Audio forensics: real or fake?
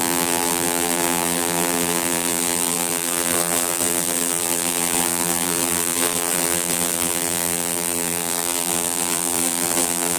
fake